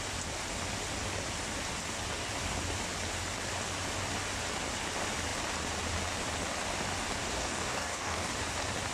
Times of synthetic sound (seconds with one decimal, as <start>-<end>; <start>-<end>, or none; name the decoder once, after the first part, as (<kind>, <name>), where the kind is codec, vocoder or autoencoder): 7.2-8.3 (codec, DAC)